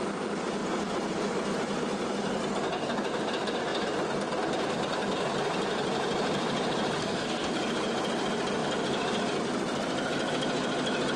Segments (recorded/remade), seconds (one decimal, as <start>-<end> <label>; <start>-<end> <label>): 0.0-7.0 recorded; 7.0-7.5 remade; 7.5-11.2 recorded